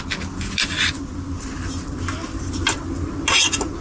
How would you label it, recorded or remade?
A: recorded